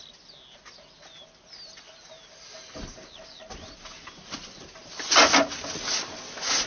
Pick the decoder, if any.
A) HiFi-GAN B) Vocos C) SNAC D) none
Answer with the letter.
D